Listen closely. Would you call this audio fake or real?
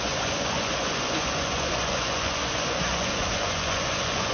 fake